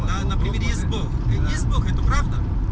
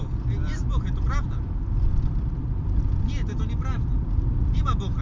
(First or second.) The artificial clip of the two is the first